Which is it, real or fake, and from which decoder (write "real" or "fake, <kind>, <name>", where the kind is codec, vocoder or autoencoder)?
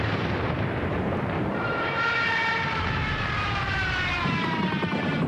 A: fake, vocoder, BigVGAN v2